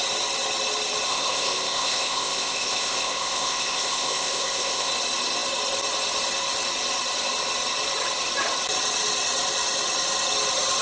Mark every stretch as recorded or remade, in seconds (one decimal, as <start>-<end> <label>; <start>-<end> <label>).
0.0-1.1 recorded; 1.1-4.9 remade; 4.9-10.8 recorded